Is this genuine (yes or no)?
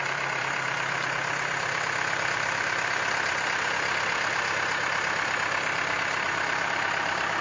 no